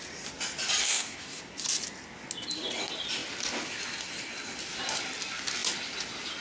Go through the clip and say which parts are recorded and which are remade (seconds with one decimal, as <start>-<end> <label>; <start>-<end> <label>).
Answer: 0.0-0.8 recorded; 0.8-1.4 remade; 1.4-6.4 recorded